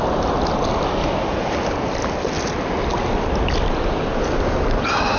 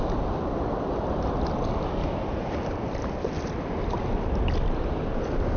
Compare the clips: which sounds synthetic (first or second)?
second